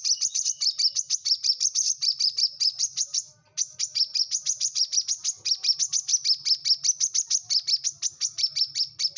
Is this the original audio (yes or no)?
yes